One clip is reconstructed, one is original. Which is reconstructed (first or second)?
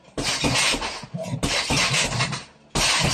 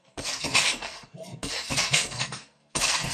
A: second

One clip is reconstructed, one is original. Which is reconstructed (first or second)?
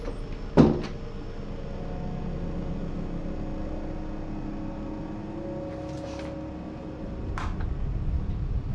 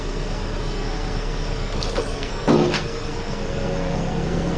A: second